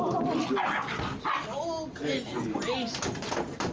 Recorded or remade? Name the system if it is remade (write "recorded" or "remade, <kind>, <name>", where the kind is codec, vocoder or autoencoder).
recorded